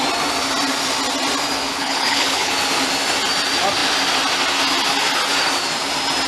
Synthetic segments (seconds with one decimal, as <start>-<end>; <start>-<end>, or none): 1.7-2.5